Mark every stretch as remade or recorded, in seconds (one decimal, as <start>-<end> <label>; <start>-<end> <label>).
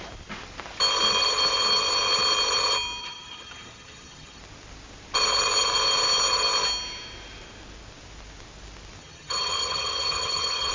0.0-3.0 recorded; 3.0-4.4 remade; 4.4-9.0 recorded; 9.0-10.7 remade